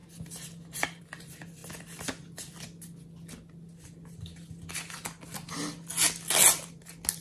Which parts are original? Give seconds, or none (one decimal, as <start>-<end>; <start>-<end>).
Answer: 0.0-7.2